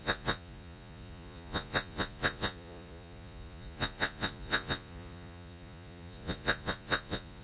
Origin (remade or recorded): remade